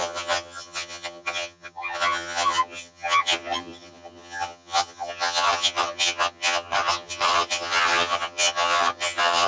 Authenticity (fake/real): fake